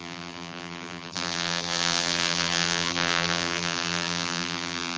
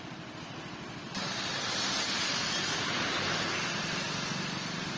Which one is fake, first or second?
first